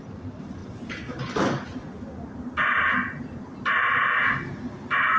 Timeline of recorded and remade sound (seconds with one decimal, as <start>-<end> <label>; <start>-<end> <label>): 0.0-5.2 recorded